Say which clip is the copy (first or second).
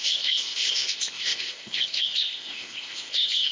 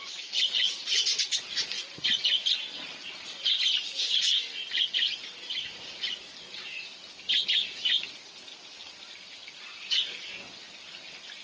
first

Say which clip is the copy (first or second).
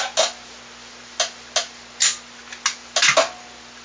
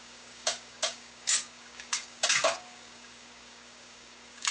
second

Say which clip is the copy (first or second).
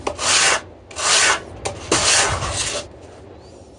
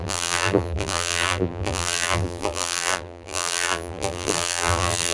second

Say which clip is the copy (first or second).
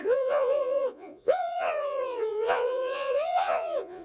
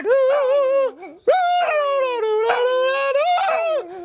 first